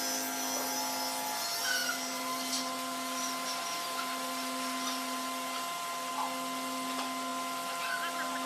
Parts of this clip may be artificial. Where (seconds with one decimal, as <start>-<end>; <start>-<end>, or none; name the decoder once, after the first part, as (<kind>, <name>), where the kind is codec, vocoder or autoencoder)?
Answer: 1.8-6.1 (vocoder, BigVGAN v2)

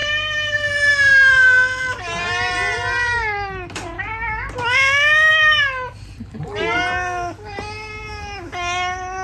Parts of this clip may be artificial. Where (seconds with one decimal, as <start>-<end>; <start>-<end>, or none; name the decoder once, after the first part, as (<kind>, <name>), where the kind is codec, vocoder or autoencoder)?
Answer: none